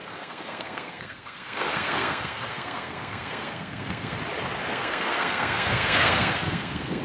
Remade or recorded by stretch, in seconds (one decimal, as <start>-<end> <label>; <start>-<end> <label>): 0.0-4.2 remade; 4.2-4.7 recorded; 4.7-7.0 remade